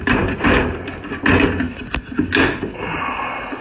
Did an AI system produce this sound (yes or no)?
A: no